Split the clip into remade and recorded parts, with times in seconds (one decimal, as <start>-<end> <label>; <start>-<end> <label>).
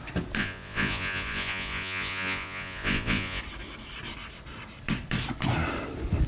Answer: 0.0-0.4 recorded; 0.4-3.4 remade; 3.4-6.3 recorded